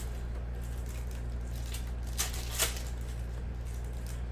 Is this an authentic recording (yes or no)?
yes